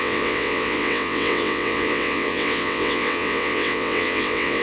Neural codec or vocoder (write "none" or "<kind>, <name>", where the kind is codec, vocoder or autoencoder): vocoder, WaveNeXt